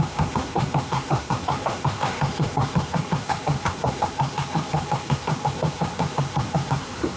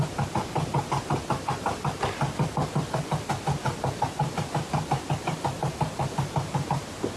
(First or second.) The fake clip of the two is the first